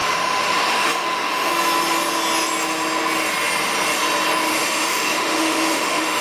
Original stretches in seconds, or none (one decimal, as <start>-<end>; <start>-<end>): 1.5-4.5